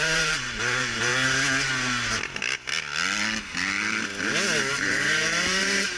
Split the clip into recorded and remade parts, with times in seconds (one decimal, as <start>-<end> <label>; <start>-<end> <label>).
0.0-1.1 remade; 1.1-4.7 recorded; 4.7-6.0 remade

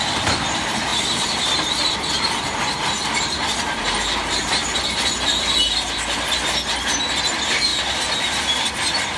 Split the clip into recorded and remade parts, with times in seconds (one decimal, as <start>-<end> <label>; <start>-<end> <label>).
0.0-0.9 recorded; 0.9-1.7 remade; 1.7-4.2 recorded; 4.2-4.8 remade; 4.8-7.7 recorded; 7.7-8.7 remade; 8.7-9.2 recorded

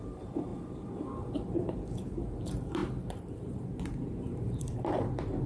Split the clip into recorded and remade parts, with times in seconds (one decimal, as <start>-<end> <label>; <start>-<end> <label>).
0.0-5.5 remade

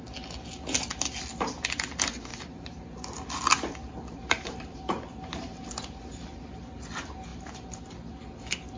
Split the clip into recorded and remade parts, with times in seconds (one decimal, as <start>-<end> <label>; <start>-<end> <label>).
0.0-2.3 recorded; 2.3-3.4 remade; 3.4-3.8 recorded; 3.8-6.8 remade; 6.8-7.3 recorded; 7.3-7.9 remade; 7.9-8.8 recorded

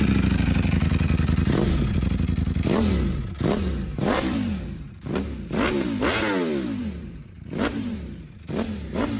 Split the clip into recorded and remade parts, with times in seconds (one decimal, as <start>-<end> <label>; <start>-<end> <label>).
0.0-3.9 recorded; 3.9-5.0 remade; 5.0-6.8 recorded; 6.8-8.5 remade; 8.5-9.2 recorded